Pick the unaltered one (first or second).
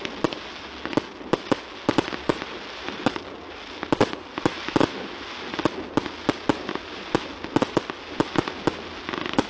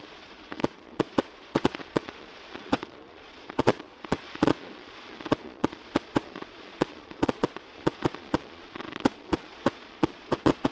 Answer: first